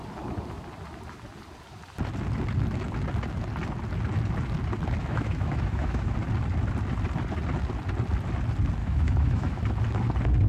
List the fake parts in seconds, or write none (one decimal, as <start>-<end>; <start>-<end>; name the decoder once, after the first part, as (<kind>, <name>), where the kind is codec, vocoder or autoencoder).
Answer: 5.0-6.1 (autoencoder, DAC-VAE); 8.8-9.6